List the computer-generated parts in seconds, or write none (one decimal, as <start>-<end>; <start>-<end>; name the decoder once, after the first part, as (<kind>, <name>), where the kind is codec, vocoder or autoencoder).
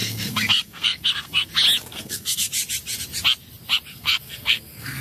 0.0-1.5 (codec, SNAC); 1.9-2.5; 3.9-5.0